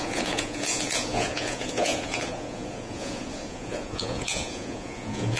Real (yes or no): no